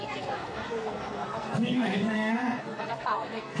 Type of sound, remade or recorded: remade